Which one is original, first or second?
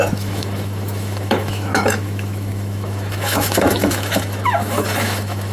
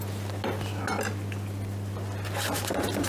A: second